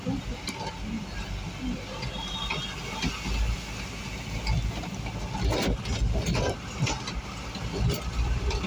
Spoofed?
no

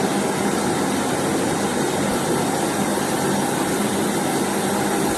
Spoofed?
no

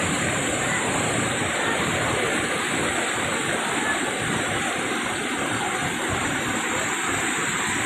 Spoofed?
no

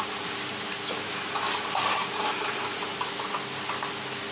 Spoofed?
no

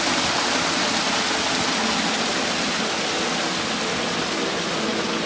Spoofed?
no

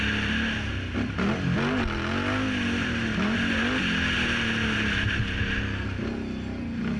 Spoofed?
no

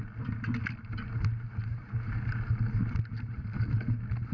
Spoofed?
no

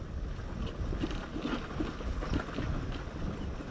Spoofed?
no